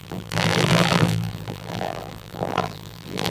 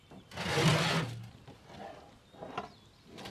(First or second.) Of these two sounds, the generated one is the first